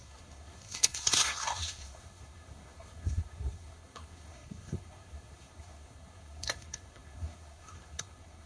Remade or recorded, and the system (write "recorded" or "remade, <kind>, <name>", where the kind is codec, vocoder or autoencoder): remade, codec, SNAC